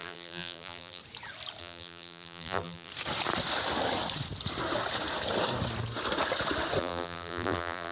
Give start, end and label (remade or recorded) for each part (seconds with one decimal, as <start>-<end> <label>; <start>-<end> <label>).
0.0-1.0 remade; 1.0-1.6 recorded; 1.6-2.9 remade; 2.9-6.8 recorded; 6.8-7.9 remade